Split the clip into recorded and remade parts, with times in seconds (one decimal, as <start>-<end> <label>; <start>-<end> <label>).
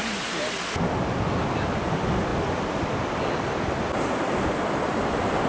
0.0-5.5 recorded